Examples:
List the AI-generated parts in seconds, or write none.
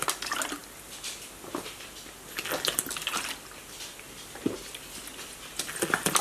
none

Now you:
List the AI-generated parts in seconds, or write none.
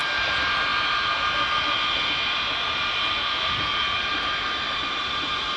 0.0-0.7 (vocoder, BigVGAN v2); 4.1-5.6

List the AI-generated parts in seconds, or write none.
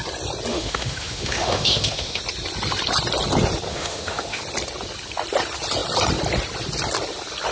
0.5-2.2 (autoencoder, DAC-VAE); 3.7-4.4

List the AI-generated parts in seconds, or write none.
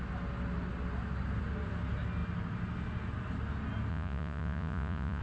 3.9-5.2 (vocoder, Vocos)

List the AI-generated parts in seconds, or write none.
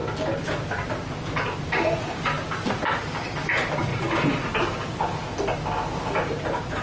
none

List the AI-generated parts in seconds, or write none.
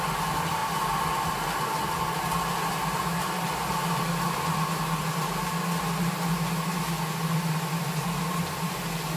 none